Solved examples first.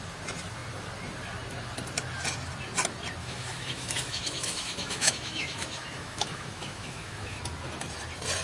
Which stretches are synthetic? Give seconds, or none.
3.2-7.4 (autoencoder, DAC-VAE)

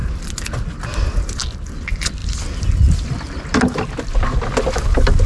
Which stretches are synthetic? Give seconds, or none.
none